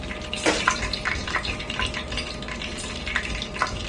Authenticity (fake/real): real